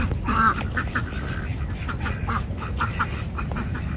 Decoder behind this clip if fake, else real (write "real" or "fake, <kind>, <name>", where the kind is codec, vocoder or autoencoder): real